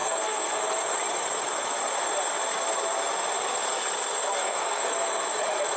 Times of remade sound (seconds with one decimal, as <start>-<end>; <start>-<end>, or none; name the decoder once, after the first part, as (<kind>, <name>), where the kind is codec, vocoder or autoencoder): 0.0-0.6 (codec, SNAC); 4.4-4.9